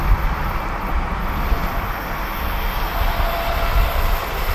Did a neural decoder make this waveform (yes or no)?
no